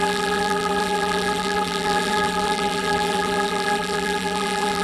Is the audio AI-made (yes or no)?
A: yes